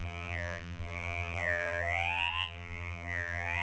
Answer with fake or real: fake